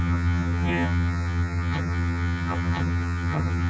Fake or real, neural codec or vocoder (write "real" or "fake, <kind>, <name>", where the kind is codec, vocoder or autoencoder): fake, vocoder, HiFi-GAN